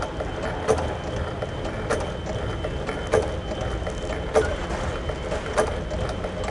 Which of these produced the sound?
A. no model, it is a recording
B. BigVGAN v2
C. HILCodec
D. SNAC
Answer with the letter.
A